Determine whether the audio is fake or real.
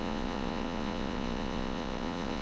fake